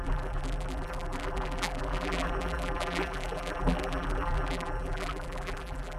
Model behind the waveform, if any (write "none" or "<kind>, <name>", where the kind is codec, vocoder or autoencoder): vocoder, BigVGAN v2